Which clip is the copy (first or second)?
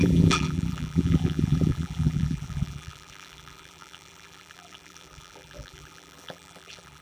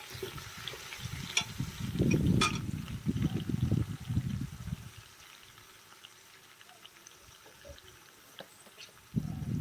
first